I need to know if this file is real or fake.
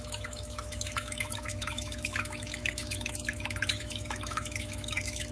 fake